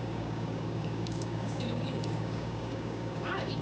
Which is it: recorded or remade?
remade